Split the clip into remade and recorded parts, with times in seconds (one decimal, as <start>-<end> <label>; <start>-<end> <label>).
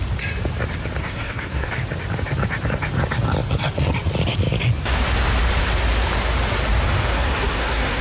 0.0-1.0 recorded; 1.0-1.7 remade; 1.7-7.1 recorded; 7.1-8.0 remade